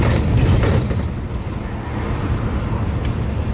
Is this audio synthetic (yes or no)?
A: no